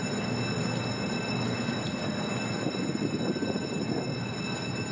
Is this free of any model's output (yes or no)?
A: yes